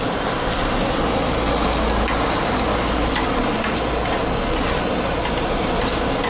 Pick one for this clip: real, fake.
real